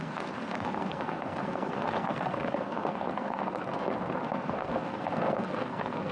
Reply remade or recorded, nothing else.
remade